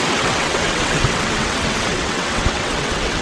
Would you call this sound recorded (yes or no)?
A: no